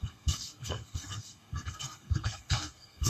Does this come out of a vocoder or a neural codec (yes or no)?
yes